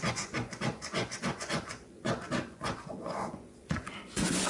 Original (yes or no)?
no